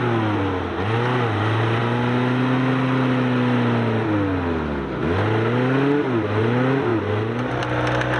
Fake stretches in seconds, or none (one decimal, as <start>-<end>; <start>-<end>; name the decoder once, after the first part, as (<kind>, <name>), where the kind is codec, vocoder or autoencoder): none